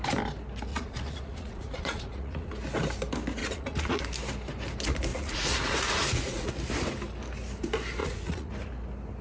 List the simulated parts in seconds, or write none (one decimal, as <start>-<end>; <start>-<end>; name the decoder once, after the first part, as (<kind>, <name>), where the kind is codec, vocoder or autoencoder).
0.7-2.5 (vocoder, Vocos); 3.4-4.0; 5.1-6.5; 8.0-8.5